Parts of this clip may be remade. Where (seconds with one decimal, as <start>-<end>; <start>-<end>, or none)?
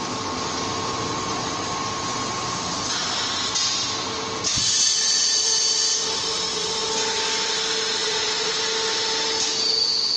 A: 8.0-8.6